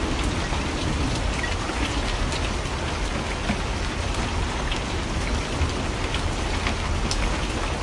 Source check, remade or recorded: recorded